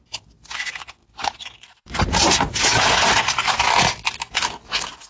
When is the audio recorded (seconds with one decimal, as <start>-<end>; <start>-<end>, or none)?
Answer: 0.0-5.1